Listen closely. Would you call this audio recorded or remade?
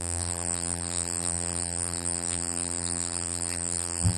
remade